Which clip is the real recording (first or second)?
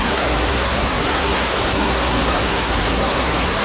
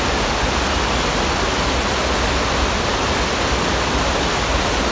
second